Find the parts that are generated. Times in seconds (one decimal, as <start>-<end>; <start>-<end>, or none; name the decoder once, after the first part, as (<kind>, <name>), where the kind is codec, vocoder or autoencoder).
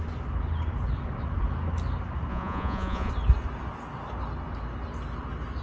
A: 2.3-3.1 (vocoder, Vocos)